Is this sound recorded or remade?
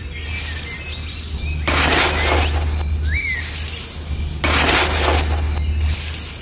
recorded